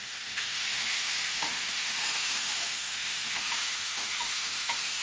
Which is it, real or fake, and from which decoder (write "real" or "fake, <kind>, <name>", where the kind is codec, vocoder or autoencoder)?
fake, autoencoder, DAC-VAE